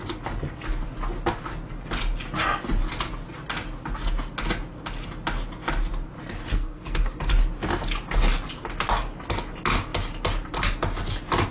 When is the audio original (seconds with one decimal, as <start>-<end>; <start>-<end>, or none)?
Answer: 0.0-6.5; 7.2-11.5

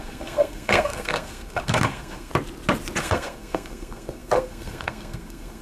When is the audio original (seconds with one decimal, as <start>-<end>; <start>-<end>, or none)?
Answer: 2.3-3.0

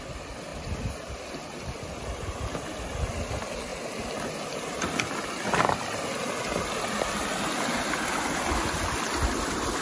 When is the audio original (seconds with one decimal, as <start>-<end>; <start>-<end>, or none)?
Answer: 0.0-9.8

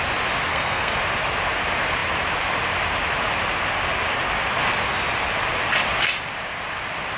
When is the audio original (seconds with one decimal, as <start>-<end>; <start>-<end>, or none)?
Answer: 0.0-0.5; 1.0-7.2